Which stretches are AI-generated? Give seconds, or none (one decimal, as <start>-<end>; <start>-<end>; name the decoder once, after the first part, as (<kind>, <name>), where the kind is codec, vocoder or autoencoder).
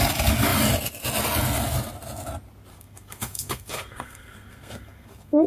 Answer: 2.7-5.5 (codec, SNAC)